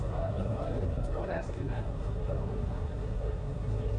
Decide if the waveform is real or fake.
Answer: fake